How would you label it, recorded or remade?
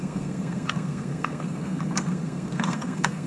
remade